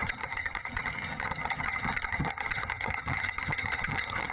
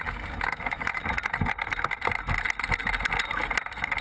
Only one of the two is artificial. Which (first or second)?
first